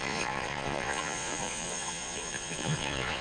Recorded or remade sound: remade